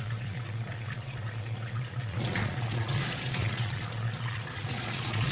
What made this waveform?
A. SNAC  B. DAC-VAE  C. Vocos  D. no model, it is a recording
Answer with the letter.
C